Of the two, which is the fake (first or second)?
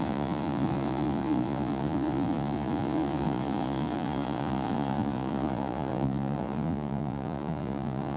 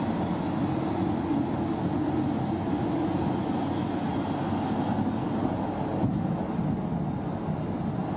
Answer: first